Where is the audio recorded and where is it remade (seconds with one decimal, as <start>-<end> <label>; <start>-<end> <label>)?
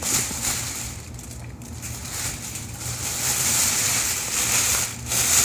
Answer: 0.0-1.5 remade; 1.5-2.0 recorded; 2.0-4.2 remade; 4.2-5.4 recorded